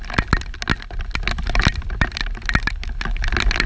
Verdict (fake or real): real